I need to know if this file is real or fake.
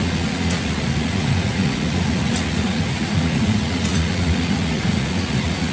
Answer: fake